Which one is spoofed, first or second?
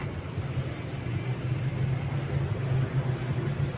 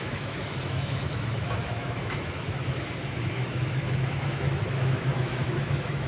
second